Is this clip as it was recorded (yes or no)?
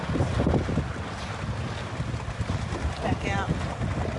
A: yes